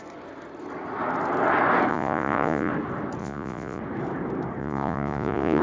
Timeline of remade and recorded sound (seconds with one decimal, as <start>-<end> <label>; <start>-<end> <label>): 0.0-1.9 recorded; 1.9-2.7 remade; 2.7-3.2 recorded; 3.2-3.8 remade; 3.8-4.6 recorded; 4.6-5.6 remade